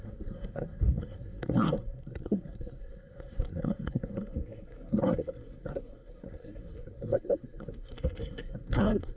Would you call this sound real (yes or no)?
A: no